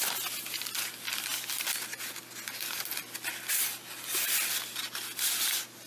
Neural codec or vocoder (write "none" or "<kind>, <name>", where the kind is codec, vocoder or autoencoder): none